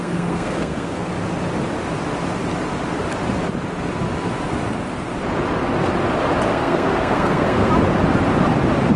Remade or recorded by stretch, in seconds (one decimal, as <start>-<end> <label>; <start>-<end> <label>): 0.0-1.1 remade; 1.1-6.5 recorded; 6.5-7.7 remade; 7.7-9.0 recorded